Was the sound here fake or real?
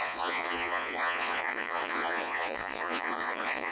fake